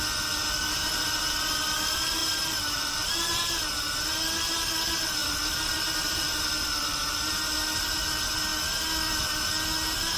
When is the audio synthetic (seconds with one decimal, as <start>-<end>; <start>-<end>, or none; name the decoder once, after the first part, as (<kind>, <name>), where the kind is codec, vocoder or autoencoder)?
0.8-1.4 (vocoder, BigVGAN v2); 2.2-3.1; 5.2-8.0